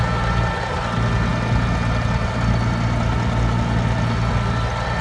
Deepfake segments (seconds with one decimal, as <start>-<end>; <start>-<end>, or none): none